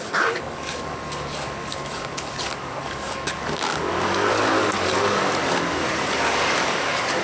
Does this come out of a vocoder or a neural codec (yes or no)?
yes